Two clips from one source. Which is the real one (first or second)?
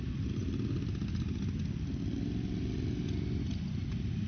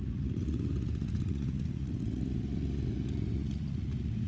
first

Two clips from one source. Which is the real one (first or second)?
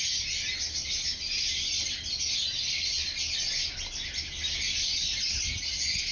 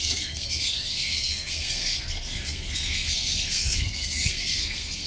first